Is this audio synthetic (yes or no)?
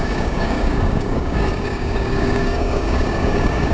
yes